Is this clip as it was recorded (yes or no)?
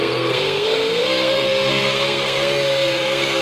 no